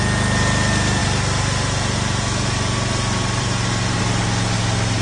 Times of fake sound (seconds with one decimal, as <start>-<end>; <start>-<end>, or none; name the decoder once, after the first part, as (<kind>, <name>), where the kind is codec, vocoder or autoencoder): 1.0-4.0 (vocoder, BigVGAN v2)